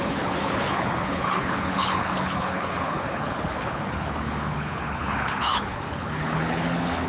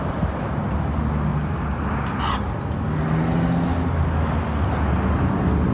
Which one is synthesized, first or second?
first